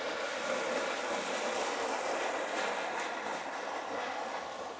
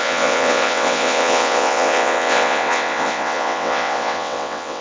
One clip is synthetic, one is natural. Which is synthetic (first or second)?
second